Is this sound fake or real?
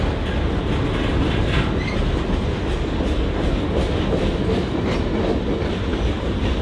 real